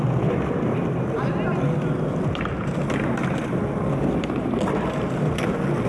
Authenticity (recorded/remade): recorded